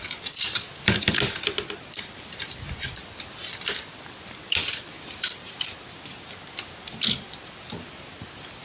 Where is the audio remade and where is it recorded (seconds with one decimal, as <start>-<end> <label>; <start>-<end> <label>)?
0.0-8.6 recorded